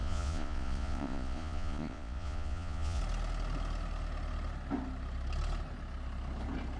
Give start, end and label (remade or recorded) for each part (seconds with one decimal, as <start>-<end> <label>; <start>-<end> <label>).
0.0-3.0 remade; 3.0-6.8 recorded